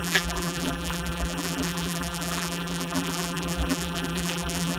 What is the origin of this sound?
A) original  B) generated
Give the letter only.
B